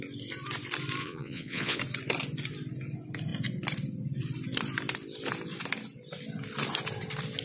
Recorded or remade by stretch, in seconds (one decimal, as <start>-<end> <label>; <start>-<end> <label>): 0.0-1.0 recorded; 1.0-1.8 remade; 1.8-7.4 recorded